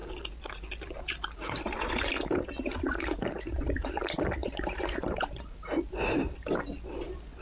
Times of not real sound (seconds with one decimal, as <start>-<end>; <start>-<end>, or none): 4.4-6.6